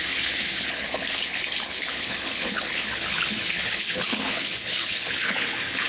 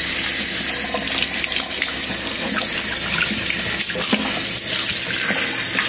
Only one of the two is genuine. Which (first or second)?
second